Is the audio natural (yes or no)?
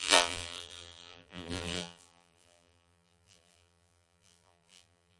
no